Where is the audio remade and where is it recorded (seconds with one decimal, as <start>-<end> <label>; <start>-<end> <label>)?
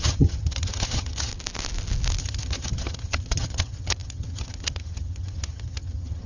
0.0-1.3 remade; 1.3-2.2 recorded; 2.2-6.3 remade